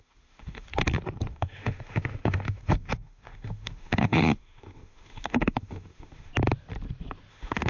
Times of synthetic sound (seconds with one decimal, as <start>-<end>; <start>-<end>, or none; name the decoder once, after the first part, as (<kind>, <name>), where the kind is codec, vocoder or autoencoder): 0.0-0.7 (autoencoder, DAC-VAE); 1.3-6.3; 7.3-7.7